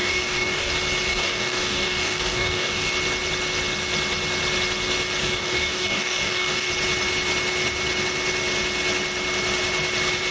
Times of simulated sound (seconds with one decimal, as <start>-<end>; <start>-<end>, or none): 0.0-0.7; 1.1-2.9; 5.2-6.7